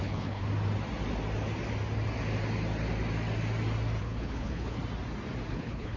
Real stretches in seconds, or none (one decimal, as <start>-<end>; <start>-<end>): 0.4-4.0; 4.8-5.5